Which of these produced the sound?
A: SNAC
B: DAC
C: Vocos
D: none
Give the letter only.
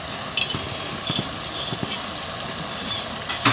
D